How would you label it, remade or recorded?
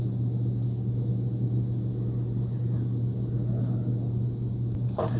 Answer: recorded